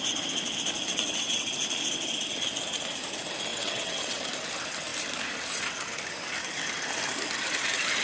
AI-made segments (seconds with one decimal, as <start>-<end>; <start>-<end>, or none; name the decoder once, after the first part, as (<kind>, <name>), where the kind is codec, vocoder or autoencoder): 0.9-1.5 (vocoder, WaveNeXt); 3.5-4.2